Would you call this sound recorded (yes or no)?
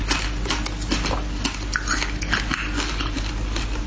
yes